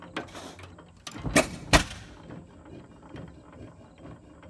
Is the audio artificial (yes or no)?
no